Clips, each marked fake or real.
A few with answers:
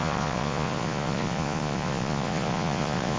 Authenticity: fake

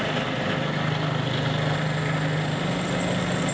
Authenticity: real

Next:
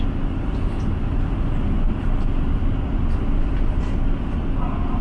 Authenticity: real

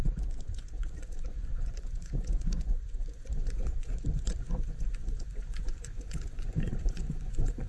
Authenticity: fake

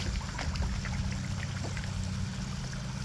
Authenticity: real